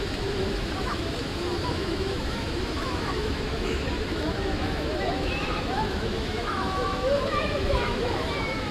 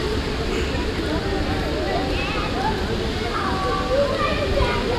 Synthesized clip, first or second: first